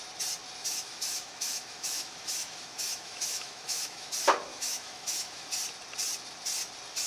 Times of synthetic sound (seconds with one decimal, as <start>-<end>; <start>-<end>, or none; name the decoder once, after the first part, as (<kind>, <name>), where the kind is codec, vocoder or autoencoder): 0.6-4.1 (autoencoder, DAC-VAE); 4.5-5.5